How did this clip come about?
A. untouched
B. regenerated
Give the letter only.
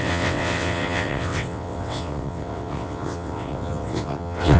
B